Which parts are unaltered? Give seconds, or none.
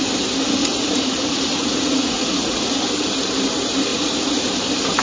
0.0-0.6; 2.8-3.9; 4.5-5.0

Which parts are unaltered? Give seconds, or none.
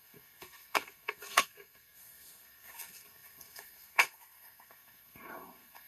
none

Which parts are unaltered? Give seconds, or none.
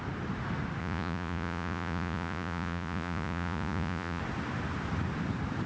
0.0-0.8; 4.2-5.7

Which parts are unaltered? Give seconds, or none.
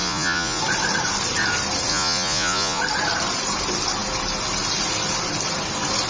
0.6-1.9; 2.8-6.1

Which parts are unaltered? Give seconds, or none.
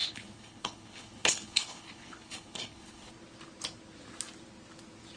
3.1-5.2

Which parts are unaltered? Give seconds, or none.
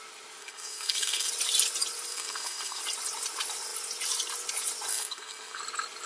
0.0-0.4; 1.3-2.1; 2.8-4.9; 5.6-6.1